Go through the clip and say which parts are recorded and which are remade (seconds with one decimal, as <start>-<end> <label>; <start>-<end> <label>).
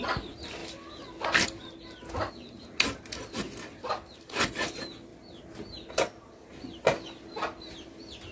0.0-8.3 recorded